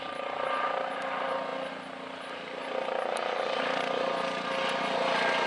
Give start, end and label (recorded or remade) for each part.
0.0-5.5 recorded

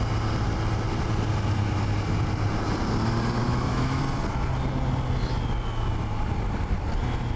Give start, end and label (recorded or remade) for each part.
0.0-3.4 recorded; 3.4-4.0 remade; 4.0-7.4 recorded

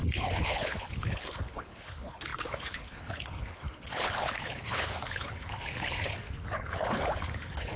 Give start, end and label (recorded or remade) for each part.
0.0-7.8 remade

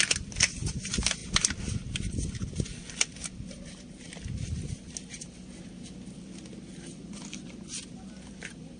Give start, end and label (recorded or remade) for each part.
0.0-8.8 recorded